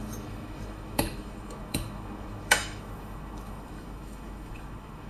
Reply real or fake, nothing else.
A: fake